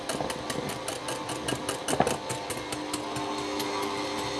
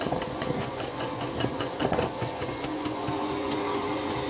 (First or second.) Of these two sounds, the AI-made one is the second